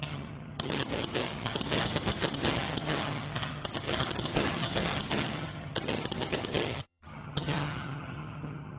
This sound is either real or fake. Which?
fake